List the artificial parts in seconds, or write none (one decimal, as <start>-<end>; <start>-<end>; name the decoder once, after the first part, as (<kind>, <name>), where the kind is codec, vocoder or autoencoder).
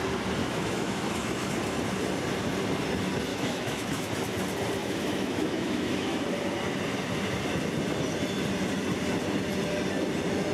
0.4-1.5 (autoencoder, DAC-VAE); 3.3-4.1; 4.8-6.2